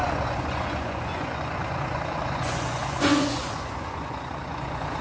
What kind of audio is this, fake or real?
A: fake